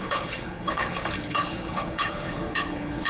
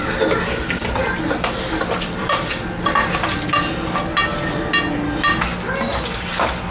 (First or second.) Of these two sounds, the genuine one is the second